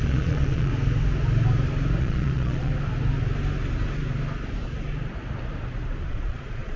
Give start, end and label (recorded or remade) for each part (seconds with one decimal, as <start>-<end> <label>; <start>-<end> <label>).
0.0-0.7 remade; 0.7-2.0 recorded; 2.0-2.7 remade; 2.7-6.1 recorded; 6.1-6.8 remade